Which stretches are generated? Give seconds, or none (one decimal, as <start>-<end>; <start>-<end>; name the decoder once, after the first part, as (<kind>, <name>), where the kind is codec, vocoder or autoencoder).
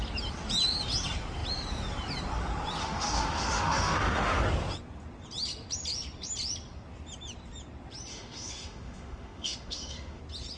2.8-4.4 (autoencoder, DAC-VAE); 8.1-10.2